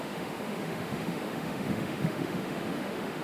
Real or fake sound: fake